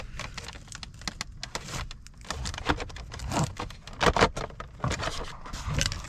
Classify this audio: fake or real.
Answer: real